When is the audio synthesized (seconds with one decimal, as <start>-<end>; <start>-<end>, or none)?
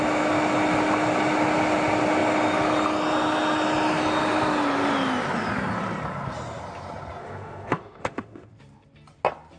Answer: 7.2-8.5